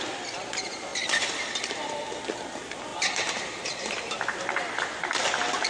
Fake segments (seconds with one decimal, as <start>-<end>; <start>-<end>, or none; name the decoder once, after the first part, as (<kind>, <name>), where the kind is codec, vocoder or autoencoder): 0.9-1.7 (vocoder, BigVGAN v2)